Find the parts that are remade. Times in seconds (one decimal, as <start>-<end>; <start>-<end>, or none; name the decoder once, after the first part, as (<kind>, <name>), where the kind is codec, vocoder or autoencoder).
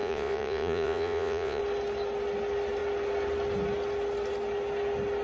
0.0-1.6 (vocoder, Vocos)